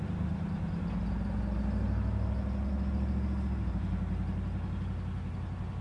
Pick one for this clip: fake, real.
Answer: real